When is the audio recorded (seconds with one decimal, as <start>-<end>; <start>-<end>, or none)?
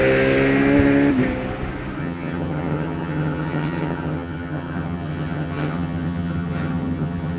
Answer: 0.0-2.0